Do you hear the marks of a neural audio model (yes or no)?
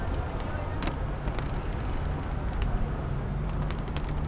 no